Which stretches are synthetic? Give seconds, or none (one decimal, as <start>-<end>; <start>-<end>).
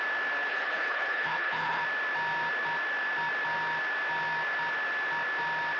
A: 0.5-1.8